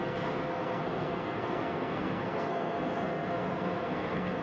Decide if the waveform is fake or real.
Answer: fake